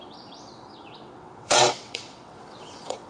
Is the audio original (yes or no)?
no